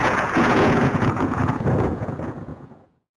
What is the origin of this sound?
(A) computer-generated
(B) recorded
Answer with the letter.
A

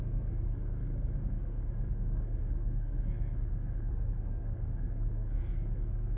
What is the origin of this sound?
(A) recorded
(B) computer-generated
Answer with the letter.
B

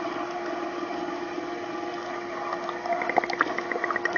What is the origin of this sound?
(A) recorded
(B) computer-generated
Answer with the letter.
A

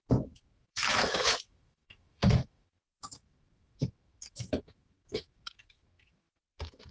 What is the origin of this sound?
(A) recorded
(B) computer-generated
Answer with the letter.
B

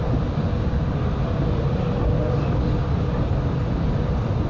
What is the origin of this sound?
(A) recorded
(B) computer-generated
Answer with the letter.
A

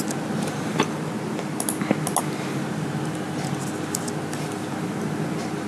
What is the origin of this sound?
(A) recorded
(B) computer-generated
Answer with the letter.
A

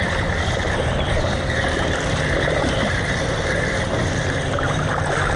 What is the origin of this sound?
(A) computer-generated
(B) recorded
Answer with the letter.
A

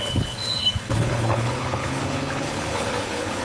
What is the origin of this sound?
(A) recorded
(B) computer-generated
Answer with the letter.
B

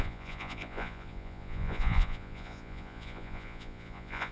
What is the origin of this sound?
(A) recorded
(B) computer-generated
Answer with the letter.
B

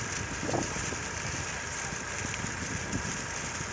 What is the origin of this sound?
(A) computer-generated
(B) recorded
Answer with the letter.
B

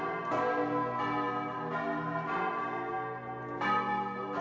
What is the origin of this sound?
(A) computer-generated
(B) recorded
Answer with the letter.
B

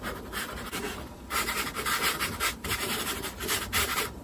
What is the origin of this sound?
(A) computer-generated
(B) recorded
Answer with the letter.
A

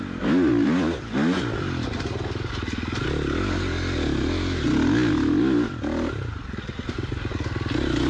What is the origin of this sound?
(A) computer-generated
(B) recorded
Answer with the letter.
B